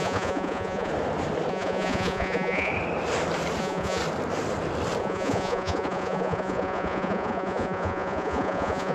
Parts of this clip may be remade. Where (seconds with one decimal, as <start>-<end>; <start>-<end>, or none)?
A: 0.0-0.9; 1.5-2.7; 3.6-4.0; 5.0-8.9